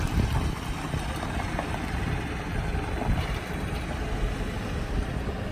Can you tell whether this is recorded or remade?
recorded